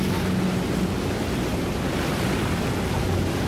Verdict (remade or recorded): recorded